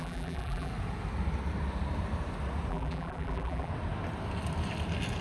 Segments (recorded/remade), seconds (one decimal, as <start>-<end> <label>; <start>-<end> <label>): 0.0-0.7 remade; 0.7-2.7 recorded; 2.7-3.7 remade; 3.7-5.2 recorded